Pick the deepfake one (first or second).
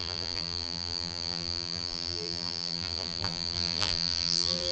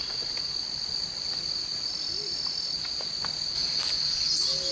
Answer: first